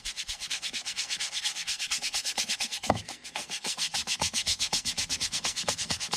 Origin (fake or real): fake